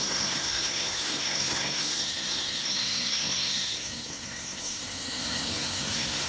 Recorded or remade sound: remade